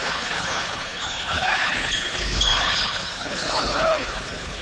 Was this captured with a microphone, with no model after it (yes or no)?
no